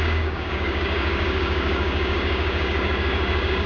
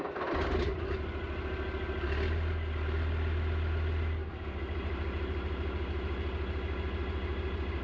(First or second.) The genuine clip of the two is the second